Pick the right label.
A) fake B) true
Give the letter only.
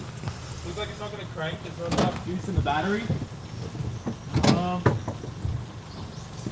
B